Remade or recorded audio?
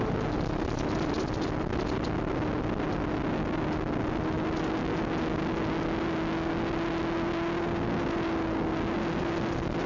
recorded